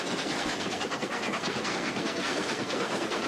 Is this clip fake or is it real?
fake